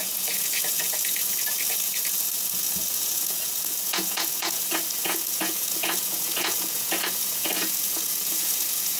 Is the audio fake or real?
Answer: fake